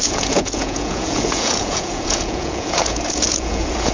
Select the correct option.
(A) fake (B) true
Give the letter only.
A